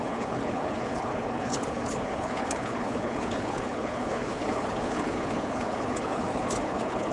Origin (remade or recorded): remade